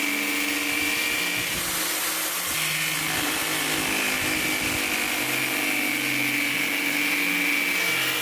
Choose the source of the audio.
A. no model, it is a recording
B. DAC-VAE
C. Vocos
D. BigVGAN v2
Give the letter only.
A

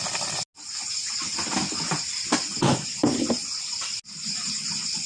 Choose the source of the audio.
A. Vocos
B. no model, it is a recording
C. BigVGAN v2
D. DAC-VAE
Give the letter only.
B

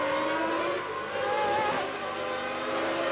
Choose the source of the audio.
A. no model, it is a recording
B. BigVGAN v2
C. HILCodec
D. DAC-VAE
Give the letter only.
A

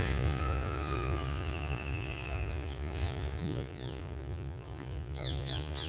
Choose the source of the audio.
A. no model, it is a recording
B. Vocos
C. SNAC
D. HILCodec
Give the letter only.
B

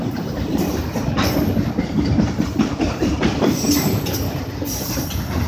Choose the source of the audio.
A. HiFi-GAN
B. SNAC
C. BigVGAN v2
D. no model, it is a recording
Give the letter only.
C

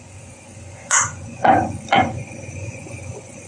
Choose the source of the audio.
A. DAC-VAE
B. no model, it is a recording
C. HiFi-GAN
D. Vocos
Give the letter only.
D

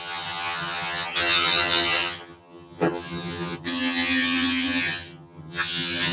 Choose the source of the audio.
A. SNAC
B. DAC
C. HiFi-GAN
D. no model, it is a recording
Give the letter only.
C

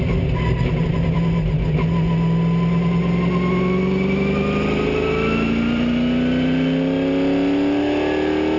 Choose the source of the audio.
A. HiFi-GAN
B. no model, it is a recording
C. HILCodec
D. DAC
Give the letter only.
B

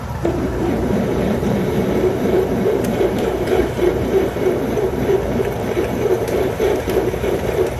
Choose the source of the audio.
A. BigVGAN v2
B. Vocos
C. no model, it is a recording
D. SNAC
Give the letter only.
A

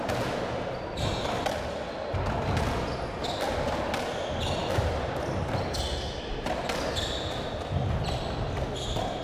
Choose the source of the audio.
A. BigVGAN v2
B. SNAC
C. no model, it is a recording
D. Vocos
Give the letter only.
C